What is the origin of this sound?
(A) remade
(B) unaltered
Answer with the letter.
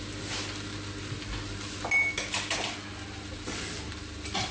B